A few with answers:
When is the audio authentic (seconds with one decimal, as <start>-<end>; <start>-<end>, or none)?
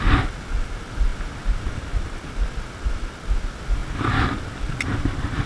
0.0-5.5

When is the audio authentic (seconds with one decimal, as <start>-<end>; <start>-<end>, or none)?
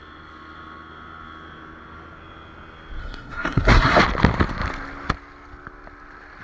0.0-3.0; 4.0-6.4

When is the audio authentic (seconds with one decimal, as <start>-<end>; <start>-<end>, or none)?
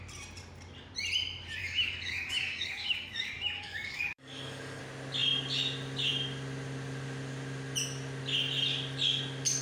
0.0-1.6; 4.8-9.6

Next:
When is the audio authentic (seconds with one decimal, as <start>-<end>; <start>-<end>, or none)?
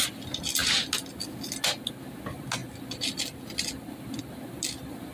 0.0-5.1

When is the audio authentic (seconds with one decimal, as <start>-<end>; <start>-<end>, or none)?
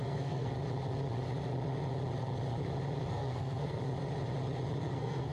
0.5-3.1; 3.8-4.8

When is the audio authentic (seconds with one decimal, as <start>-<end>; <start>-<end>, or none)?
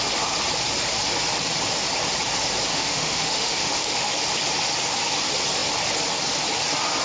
0.0-2.7; 4.1-7.0